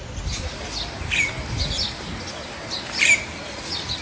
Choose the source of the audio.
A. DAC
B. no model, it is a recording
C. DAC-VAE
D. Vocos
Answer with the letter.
B